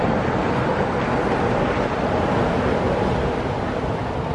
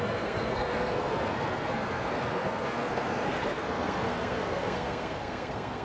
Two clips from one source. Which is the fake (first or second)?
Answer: second